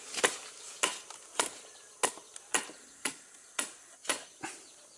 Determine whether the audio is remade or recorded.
recorded